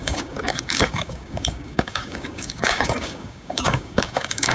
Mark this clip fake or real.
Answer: fake